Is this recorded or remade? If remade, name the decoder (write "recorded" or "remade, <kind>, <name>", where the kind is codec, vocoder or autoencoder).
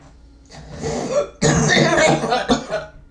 recorded